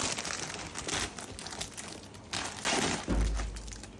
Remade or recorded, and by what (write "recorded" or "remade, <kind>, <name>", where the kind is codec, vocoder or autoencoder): recorded